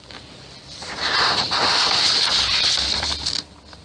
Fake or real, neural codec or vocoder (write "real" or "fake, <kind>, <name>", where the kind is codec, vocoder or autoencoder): real